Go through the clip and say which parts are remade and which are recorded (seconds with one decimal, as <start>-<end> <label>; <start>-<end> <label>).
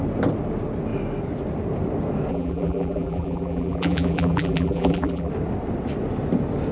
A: 0.0-2.3 recorded; 2.3-5.3 remade; 5.3-6.7 recorded